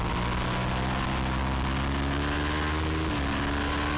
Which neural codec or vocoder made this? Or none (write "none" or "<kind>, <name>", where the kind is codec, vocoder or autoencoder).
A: none